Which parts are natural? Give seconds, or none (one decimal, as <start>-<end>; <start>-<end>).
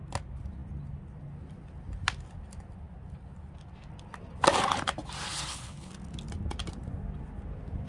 0.0-5.3; 5.9-7.9